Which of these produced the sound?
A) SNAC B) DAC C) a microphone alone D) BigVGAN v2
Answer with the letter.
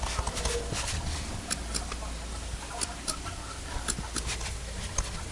C